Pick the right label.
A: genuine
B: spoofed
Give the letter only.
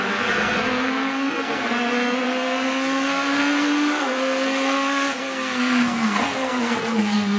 B